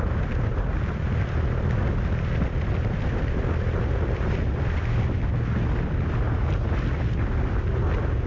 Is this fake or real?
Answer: real